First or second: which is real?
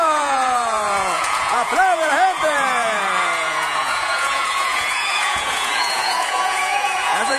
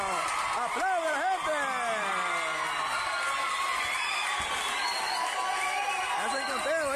second